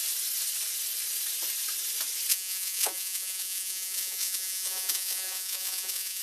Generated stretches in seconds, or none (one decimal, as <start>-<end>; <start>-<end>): 2.3-6.2